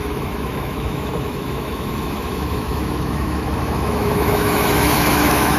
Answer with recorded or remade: remade